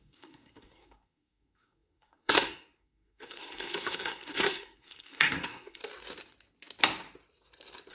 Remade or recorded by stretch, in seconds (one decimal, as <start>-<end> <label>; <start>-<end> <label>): 0.0-5.8 remade; 5.8-7.9 recorded